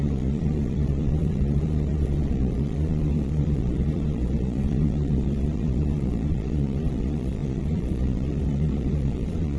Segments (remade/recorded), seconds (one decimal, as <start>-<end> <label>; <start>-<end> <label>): 0.0-9.6 remade